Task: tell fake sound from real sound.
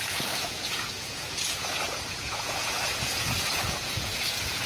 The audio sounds fake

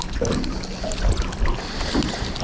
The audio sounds real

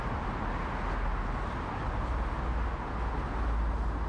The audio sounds real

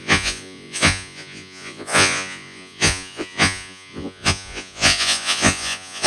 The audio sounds fake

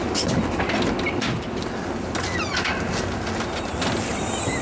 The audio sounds real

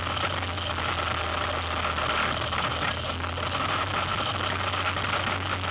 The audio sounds real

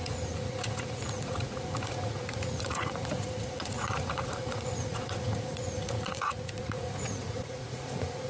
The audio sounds fake